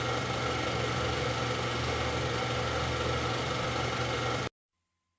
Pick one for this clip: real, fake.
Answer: real